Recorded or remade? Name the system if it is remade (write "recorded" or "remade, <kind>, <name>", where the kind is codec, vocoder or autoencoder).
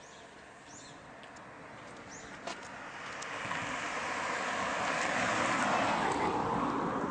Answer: recorded